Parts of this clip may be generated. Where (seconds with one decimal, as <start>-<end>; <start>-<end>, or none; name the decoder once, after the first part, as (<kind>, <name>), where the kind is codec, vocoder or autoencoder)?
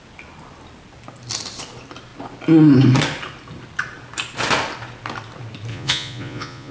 5.7-6.7 (vocoder, Vocos)